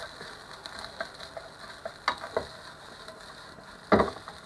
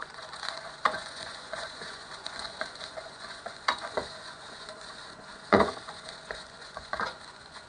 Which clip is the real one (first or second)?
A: first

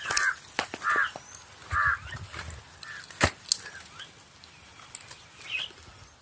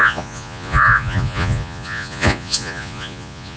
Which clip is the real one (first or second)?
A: first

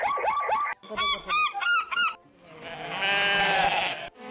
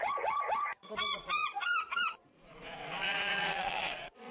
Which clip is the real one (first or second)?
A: first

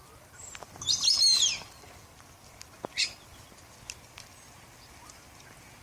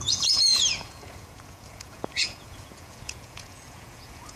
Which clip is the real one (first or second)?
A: first